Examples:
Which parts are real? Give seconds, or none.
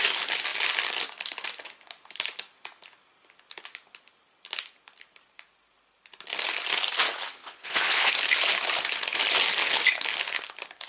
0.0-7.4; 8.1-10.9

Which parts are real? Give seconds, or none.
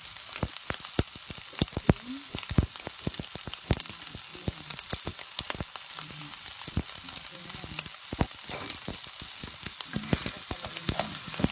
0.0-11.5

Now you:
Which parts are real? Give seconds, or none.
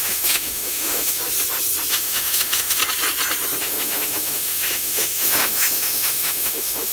1.2-1.9; 2.8-3.6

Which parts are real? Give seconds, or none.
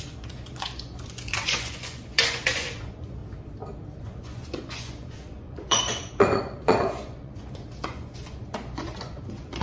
3.2-4.0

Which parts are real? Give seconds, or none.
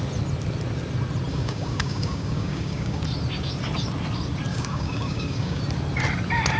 0.0-1.3; 3.0-4.5; 5.6-6.6